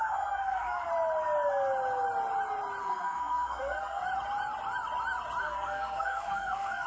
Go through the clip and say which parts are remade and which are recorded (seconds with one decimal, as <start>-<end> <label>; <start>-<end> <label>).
0.0-0.9 remade; 0.9-2.8 recorded; 2.8-4.0 remade; 4.0-5.4 recorded; 5.4-6.9 remade